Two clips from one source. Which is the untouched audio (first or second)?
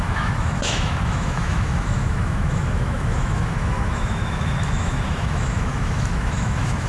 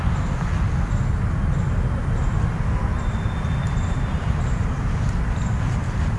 second